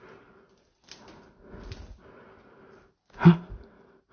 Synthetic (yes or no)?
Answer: no